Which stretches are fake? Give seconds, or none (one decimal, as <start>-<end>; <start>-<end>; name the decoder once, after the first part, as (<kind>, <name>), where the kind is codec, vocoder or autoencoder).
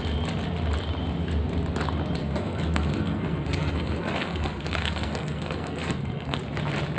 2.2-6.4 (codec, SNAC)